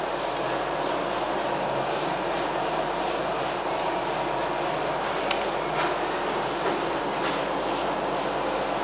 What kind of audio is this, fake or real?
real